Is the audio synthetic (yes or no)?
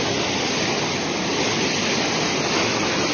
no